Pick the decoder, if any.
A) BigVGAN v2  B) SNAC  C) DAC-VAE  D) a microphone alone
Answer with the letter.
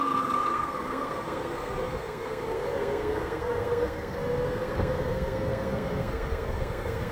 B